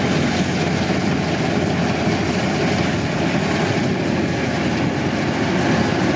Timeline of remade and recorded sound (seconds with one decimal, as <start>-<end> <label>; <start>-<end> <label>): 0.0-6.2 recorded